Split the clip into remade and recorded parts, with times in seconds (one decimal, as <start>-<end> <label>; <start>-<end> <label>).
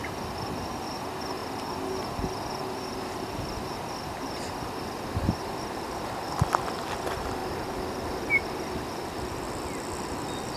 0.0-1.4 recorded; 1.4-5.4 remade; 5.4-10.6 recorded